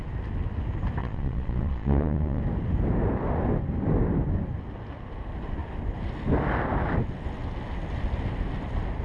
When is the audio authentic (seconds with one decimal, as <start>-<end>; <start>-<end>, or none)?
0.0-1.0; 2.4-9.0